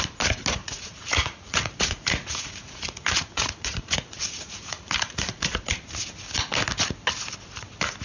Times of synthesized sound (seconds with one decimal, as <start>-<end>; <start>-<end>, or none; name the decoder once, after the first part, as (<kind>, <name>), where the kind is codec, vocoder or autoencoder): 0.6-5.4 (vocoder, Vocos)